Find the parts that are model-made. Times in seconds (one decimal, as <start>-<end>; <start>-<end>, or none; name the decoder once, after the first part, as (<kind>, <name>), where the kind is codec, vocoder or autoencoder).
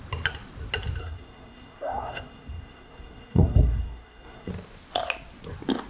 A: 1.0-4.5 (codec, SNAC)